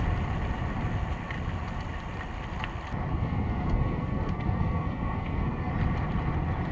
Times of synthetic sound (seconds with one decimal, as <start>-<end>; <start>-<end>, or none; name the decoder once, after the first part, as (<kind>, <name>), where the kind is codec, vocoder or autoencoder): 3.1-5.7 (codec, SNAC)